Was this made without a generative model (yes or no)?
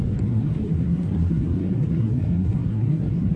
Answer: no